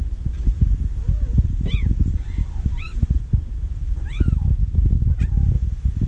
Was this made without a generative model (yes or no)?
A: yes